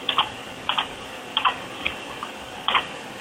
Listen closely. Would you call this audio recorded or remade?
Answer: remade